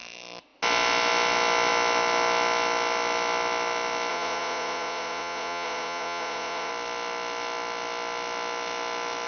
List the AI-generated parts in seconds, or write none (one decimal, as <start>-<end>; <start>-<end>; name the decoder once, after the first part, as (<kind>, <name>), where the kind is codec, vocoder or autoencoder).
4.1-6.7 (vocoder, Vocos)